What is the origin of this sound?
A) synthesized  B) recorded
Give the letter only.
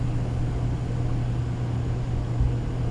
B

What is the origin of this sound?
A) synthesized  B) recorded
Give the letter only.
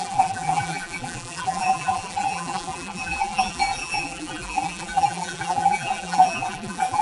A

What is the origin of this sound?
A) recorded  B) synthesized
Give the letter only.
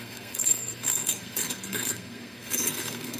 B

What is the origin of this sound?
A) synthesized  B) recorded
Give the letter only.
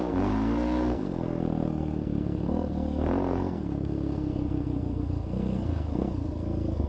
A